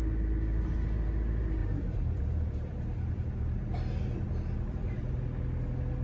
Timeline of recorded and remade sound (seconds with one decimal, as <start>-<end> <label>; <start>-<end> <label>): 0.0-1.6 recorded; 1.6-5.2 remade; 5.2-6.0 recorded